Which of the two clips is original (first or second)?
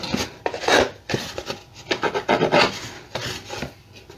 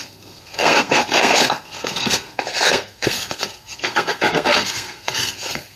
first